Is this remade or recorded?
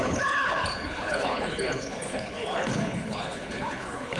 remade